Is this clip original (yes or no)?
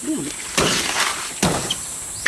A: no